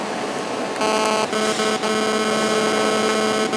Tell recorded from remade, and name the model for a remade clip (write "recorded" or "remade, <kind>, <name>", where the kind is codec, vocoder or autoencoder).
recorded